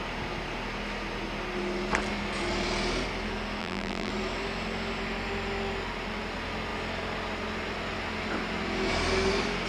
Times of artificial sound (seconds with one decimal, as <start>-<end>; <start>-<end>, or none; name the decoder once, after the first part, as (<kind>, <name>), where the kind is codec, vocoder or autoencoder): 3.6-4.1 (vocoder, BigVGAN v2)